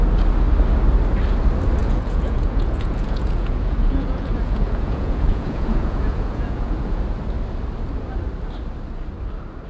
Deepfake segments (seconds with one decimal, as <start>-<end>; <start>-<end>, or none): 1.8-7.0